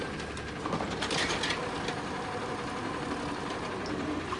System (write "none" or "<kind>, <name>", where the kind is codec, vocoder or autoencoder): none